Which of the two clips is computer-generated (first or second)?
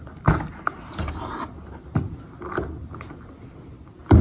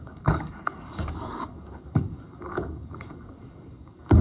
second